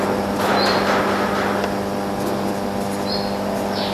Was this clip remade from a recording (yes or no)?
no